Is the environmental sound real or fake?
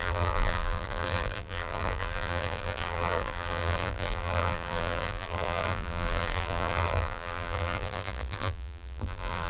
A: fake